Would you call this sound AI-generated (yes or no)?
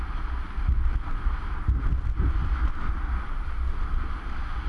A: no